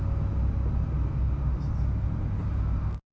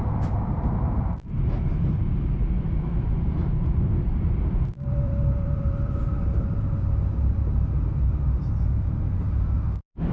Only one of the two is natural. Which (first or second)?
first